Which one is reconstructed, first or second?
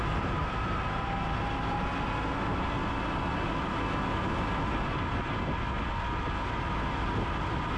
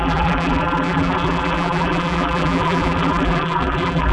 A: second